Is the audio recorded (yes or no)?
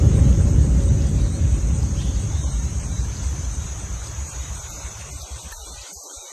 no